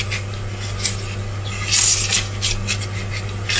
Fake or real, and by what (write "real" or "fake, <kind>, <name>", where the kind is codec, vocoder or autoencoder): real